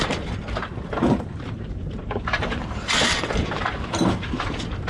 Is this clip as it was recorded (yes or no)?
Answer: no